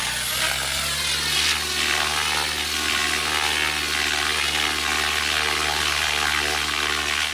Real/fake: real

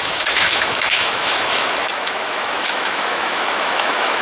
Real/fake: fake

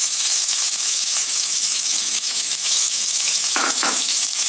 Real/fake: fake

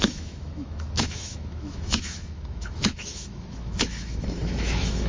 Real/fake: fake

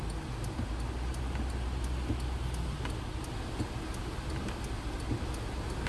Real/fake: real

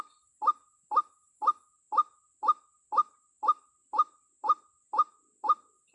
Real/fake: real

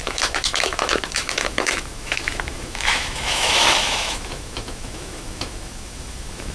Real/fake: fake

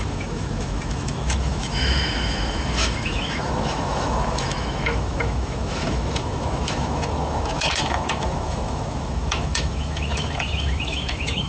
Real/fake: fake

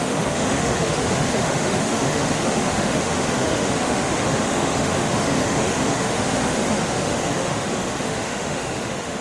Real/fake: fake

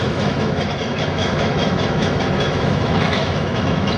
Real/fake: fake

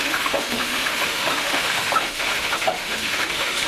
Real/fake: fake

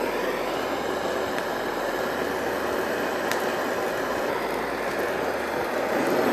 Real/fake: real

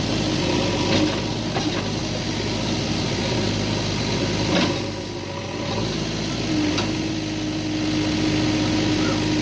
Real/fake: real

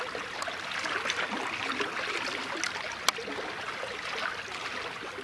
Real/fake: real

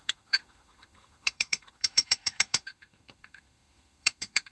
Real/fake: fake